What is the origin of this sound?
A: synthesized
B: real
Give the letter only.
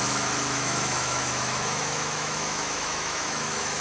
A